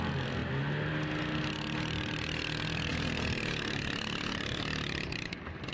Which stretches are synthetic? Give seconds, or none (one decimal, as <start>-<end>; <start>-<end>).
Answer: 2.9-5.7